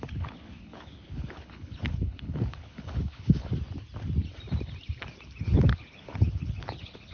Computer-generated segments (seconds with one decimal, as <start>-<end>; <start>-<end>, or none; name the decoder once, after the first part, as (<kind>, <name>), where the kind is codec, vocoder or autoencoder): 0.0-3.5 (codec, HILCodec); 5.4-7.1